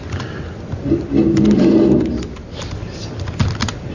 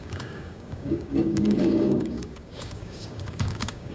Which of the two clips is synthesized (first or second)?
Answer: second